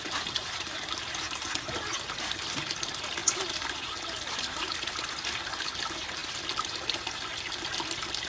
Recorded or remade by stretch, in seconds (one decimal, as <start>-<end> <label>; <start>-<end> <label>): 0.0-8.3 recorded